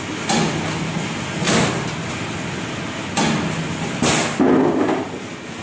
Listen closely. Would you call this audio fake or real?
real